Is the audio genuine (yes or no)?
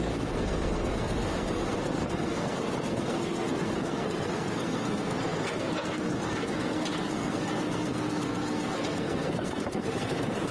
no